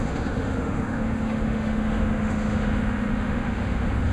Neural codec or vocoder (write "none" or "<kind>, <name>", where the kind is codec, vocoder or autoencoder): autoencoder, DAC-VAE